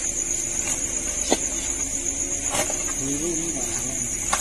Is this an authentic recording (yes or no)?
yes